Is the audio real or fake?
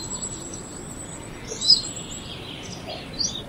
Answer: real